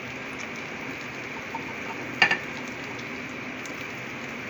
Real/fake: real